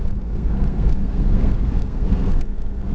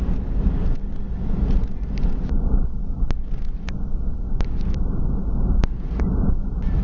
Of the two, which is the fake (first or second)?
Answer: first